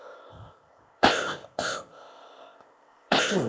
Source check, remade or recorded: remade